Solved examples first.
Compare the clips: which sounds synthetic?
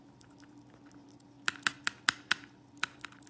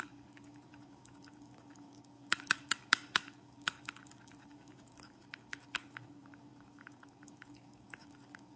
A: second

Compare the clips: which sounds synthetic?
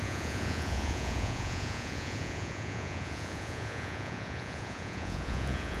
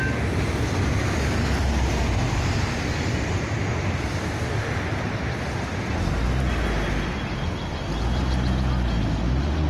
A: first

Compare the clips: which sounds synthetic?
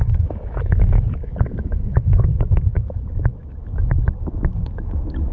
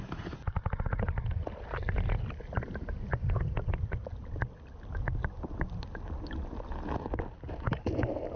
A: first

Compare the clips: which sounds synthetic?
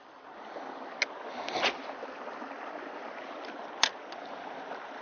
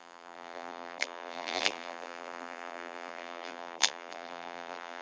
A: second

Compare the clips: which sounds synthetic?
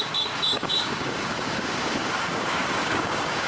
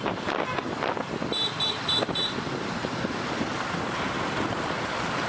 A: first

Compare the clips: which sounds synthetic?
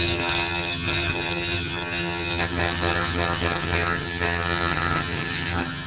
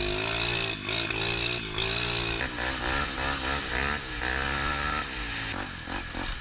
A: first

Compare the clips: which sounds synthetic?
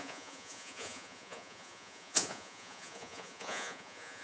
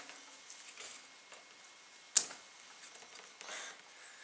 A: first